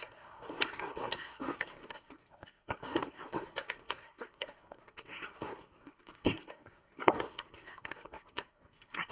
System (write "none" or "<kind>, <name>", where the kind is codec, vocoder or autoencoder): codec, SNAC